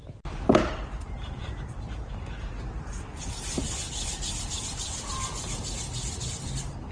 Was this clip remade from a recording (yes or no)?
no